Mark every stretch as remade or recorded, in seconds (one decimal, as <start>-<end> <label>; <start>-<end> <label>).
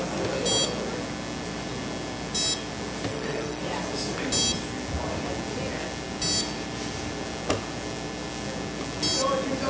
0.0-3.1 recorded; 3.1-3.6 remade; 3.6-9.7 recorded